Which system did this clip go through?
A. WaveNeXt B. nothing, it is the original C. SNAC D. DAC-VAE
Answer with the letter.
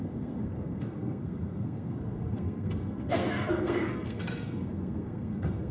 C